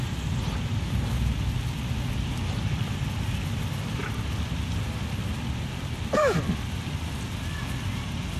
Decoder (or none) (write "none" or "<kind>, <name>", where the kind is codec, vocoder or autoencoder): none